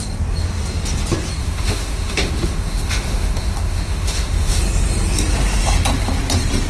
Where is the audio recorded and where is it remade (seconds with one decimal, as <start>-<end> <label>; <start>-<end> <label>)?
0.0-1.4 recorded; 1.4-4.6 remade; 4.6-6.7 recorded